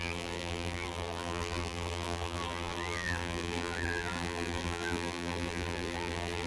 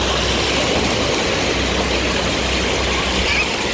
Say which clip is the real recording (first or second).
second